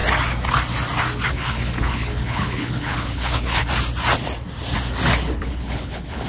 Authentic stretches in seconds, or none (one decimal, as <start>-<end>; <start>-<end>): 0.0-1.3; 3.6-5.4